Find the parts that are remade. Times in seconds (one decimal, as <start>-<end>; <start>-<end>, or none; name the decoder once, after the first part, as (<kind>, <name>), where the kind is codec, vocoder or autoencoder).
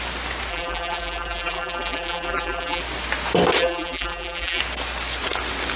0.5-2.8 (vocoder, BigVGAN v2); 3.6-4.6